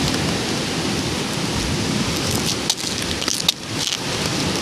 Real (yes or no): yes